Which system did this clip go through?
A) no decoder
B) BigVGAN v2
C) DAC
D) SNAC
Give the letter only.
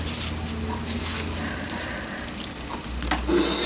A